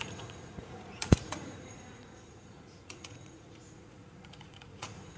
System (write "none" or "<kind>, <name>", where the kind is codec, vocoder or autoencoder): vocoder, Vocos